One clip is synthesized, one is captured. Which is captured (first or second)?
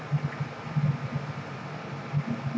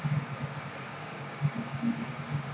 first